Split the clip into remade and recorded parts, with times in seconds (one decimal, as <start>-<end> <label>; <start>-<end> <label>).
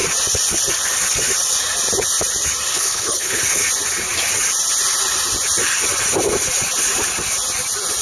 0.0-2.7 recorded; 2.7-3.4 remade; 3.4-8.0 recorded